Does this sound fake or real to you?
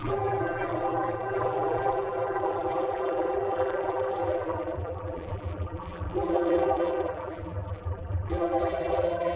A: fake